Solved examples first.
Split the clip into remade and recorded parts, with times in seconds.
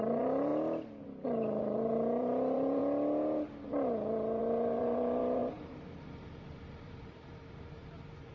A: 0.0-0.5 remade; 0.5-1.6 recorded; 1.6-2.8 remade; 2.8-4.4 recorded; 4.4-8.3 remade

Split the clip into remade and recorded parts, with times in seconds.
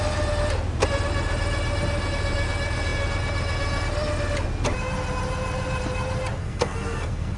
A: 0.0-6.4 recorded; 6.4-7.4 remade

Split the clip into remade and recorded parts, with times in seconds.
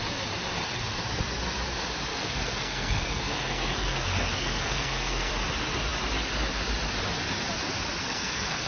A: 0.0-2.1 recorded; 2.1-5.3 remade; 5.3-8.0 recorded; 8.0-8.7 remade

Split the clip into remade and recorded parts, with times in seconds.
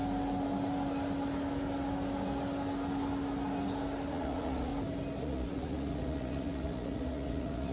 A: 0.0-4.1 recorded; 4.1-4.7 remade; 4.7-5.2 recorded; 5.2-7.7 remade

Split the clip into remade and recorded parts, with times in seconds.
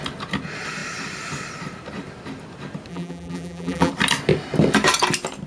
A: 0.0-2.9 recorded; 2.9-3.9 remade; 3.9-5.5 recorded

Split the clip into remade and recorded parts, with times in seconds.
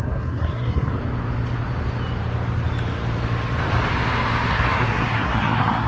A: 0.0-1.0 remade; 1.0-4.5 recorded; 4.5-5.9 remade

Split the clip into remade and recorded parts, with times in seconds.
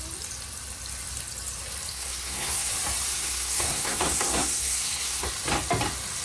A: 0.0-1.9 recorded; 1.9-2.7 remade; 2.7-3.1 recorded; 3.1-5.3 remade; 5.3-6.2 recorded